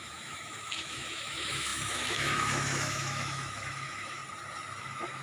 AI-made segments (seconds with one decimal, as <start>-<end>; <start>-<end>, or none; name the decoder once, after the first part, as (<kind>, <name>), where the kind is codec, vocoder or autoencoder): 0.0-4.2 (autoencoder, DAC-VAE); 4.8-5.2